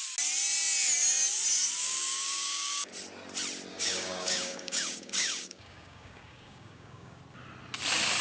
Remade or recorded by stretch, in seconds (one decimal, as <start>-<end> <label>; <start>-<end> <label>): 0.0-1.8 recorded; 1.8-2.9 remade; 2.9-3.7 recorded; 3.7-7.2 remade; 7.2-8.2 recorded